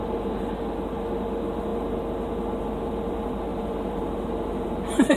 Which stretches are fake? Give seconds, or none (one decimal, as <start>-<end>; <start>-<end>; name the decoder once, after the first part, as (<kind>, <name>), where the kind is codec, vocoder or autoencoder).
0.0-0.5 (vocoder, BigVGAN v2); 3.5-5.2